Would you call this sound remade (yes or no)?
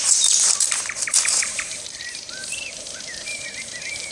yes